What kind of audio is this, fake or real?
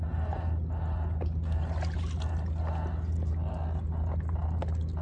real